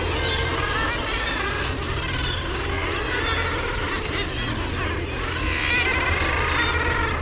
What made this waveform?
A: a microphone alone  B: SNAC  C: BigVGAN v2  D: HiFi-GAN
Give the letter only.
A